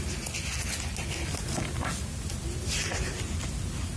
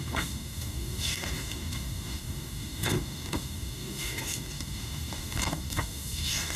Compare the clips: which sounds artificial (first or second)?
second